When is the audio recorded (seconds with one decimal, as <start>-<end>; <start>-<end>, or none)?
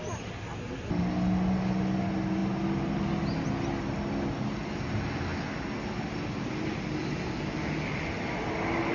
0.0-8.9